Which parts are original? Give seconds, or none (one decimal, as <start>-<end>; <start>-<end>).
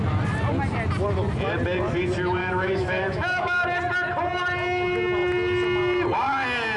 0.0-2.4; 3.6-6.8